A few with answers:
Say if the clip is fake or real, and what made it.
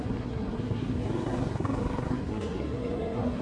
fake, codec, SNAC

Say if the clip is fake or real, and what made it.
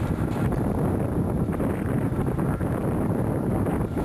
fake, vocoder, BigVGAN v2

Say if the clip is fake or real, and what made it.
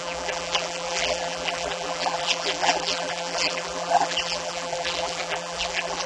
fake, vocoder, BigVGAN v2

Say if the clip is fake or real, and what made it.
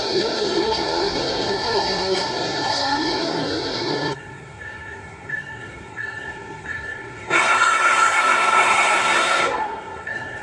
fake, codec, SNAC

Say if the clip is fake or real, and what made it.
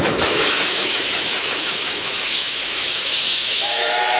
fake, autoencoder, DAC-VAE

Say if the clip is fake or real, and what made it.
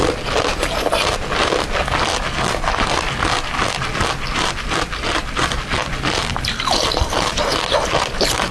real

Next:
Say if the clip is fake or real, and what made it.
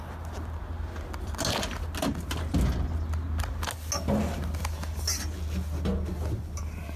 real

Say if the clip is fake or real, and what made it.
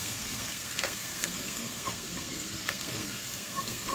fake, codec, SNAC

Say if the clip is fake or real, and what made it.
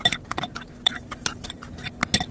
real